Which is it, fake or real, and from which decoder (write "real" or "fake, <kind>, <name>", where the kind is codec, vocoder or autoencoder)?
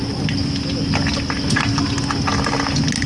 real